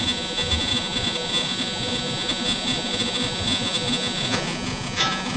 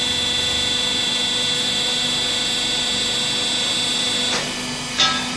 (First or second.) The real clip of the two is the second